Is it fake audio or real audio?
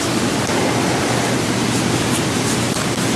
real